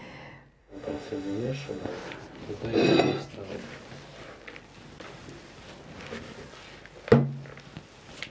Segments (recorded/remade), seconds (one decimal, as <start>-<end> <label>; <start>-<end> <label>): 0.0-0.6 recorded; 0.6-1.9 remade; 1.9-8.3 recorded